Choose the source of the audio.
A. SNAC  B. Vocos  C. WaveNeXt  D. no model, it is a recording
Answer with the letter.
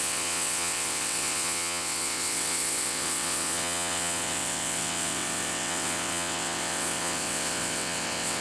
C